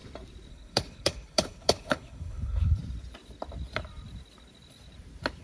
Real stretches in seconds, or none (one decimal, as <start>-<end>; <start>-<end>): 0.0-0.5; 2.8-5.4